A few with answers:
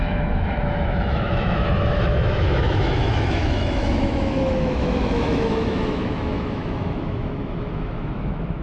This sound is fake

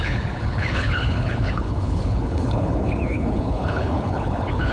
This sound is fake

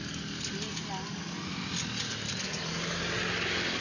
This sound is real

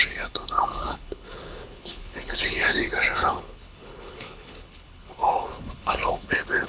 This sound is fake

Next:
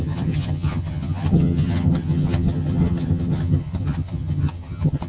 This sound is fake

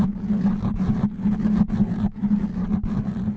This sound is real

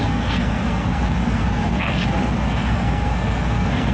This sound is fake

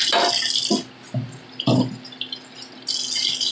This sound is real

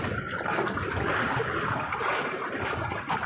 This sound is real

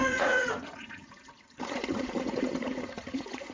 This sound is fake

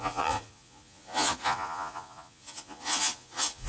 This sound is fake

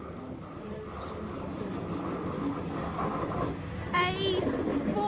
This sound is real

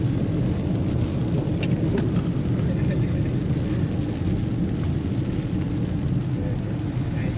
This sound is real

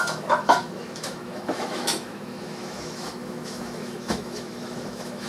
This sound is fake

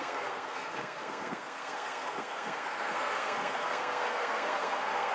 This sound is fake